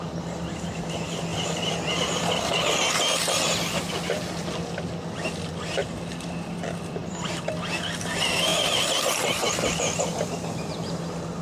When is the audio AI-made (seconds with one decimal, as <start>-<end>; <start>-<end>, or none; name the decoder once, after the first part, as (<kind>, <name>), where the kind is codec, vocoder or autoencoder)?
none